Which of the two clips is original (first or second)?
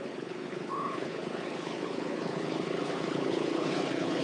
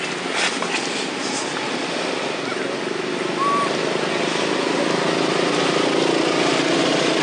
second